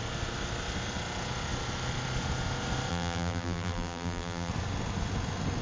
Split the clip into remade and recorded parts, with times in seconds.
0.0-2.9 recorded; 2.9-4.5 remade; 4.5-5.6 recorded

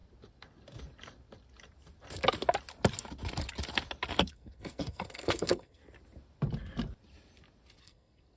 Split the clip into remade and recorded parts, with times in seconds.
0.0-4.3 recorded; 4.3-5.8 remade; 5.8-7.8 recorded; 7.8-8.4 remade

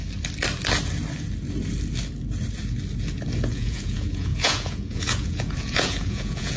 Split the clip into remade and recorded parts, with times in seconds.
0.0-3.5 recorded; 3.5-6.6 remade

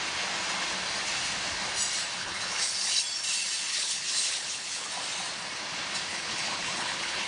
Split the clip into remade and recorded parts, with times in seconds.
0.0-2.2 recorded; 2.2-3.0 remade; 3.0-3.7 recorded; 3.7-4.9 remade; 4.9-6.1 recorded; 6.1-7.3 remade

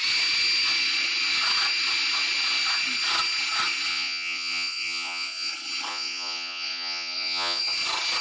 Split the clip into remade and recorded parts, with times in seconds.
0.0-3.9 recorded; 3.9-5.5 remade; 5.5-5.9 recorded; 5.9-7.6 remade; 7.6-8.2 recorded